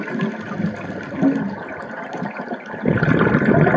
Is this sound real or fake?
real